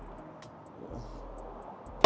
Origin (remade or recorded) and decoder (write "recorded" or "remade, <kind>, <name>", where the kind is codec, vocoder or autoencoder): recorded